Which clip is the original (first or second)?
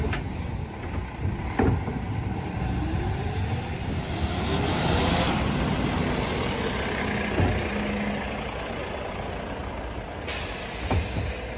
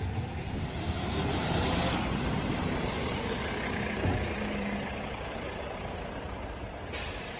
first